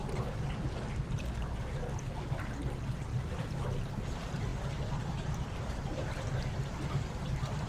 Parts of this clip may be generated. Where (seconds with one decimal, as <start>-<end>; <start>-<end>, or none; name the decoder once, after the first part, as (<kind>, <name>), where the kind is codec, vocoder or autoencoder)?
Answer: 3.1-3.8 (vocoder, BigVGAN v2)